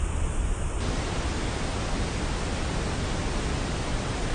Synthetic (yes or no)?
no